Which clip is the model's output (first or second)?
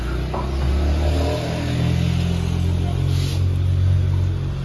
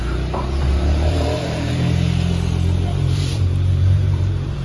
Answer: second